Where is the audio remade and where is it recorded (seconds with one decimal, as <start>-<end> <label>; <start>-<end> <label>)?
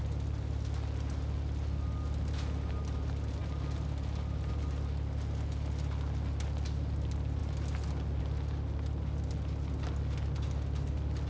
0.0-11.3 recorded